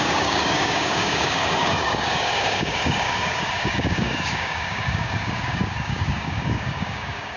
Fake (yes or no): yes